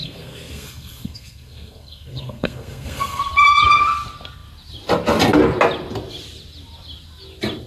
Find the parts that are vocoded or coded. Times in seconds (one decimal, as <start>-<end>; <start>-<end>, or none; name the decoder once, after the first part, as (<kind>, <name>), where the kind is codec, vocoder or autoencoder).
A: 0.0-3.2 (codec, SNAC)